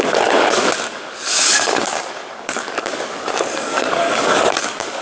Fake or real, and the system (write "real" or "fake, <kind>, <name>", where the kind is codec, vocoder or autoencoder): fake, codec, DAC